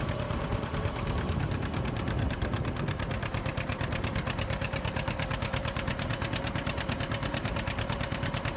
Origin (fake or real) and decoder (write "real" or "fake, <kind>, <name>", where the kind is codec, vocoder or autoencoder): fake, vocoder, BigVGAN v2